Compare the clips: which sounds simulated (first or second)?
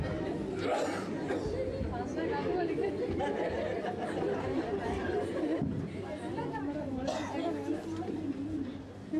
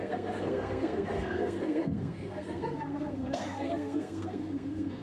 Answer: second